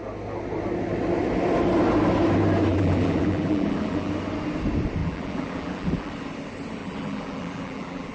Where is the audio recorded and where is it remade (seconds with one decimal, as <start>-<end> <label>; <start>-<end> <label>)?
0.0-2.7 recorded; 2.7-4.1 remade; 4.1-5.0 recorded; 5.0-6.1 remade; 6.1-6.8 recorded; 6.8-8.1 remade